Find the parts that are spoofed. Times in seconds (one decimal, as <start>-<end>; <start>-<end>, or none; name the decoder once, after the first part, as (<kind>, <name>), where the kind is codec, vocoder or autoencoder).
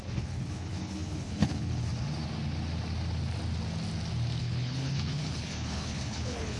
0.0-1.9 (codec, HILCodec); 4.4-6.6